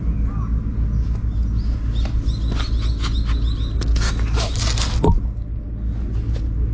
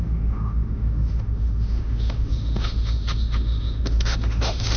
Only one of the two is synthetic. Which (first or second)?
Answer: second